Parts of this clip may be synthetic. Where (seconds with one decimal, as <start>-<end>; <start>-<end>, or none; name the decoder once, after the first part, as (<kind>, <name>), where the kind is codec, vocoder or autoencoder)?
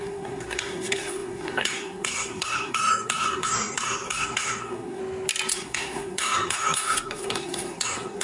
0.0-5.0 (codec, SNAC); 5.5-8.2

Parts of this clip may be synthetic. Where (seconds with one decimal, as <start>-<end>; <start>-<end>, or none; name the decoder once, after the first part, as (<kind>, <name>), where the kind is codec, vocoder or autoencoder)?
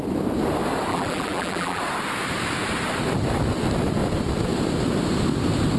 0.9-1.8 (vocoder, BigVGAN v2)